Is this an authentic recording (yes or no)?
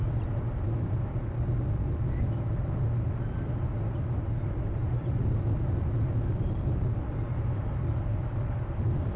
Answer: yes